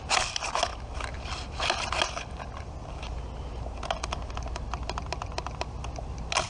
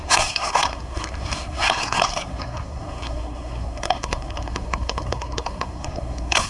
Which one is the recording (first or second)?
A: first